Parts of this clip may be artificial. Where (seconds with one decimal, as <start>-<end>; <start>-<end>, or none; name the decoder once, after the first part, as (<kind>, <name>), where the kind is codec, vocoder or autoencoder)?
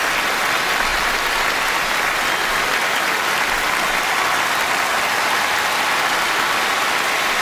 2.4-6.8 (vocoder, BigVGAN v2)